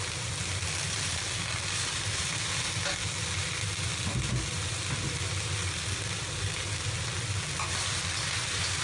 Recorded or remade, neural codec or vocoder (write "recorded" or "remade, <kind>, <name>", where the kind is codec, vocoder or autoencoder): recorded